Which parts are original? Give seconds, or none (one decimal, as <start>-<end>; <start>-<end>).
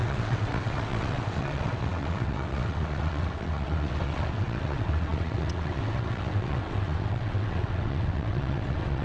none